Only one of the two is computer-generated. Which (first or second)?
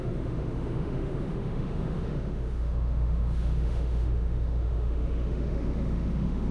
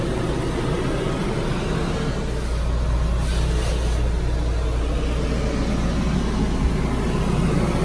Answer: first